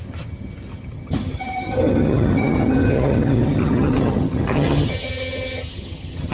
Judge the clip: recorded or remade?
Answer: remade